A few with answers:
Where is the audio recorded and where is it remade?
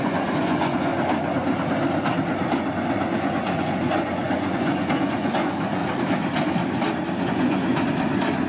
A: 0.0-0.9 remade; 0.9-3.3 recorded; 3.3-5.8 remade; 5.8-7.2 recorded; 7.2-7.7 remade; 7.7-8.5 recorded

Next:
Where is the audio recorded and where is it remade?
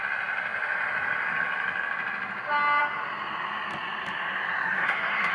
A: 0.0-4.6 recorded; 4.6-5.3 remade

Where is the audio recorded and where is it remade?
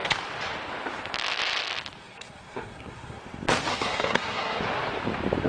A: 0.0-2.0 recorded; 2.0-3.2 remade; 3.2-3.7 recorded; 3.7-4.6 remade; 4.6-5.5 recorded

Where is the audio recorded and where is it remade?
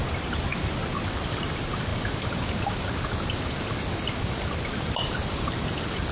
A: 0.0-0.5 remade; 0.5-1.1 recorded; 1.1-1.9 remade; 1.9-4.6 recorded; 4.6-6.1 remade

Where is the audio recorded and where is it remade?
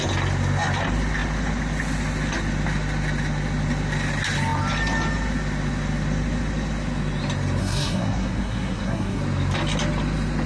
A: 0.0-7.6 recorded; 7.6-9.2 remade; 9.2-10.5 recorded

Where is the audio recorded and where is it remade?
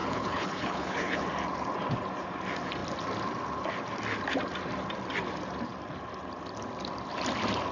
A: 0.0-1.2 remade; 1.2-7.7 recorded